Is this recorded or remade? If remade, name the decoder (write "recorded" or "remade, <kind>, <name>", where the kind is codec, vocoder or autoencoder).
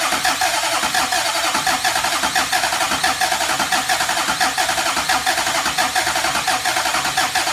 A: recorded